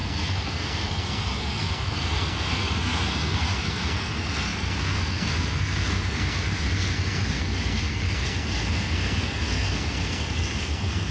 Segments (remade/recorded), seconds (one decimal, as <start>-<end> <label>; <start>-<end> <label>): 0.0-11.1 remade